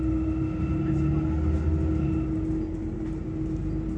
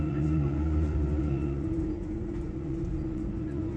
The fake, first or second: second